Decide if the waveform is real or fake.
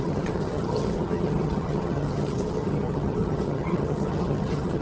fake